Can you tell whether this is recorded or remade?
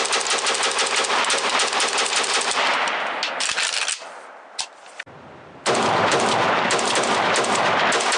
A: recorded